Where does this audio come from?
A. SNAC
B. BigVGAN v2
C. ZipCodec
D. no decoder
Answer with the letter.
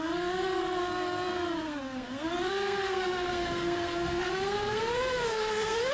A